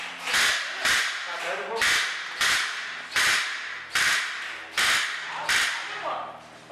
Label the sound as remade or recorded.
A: recorded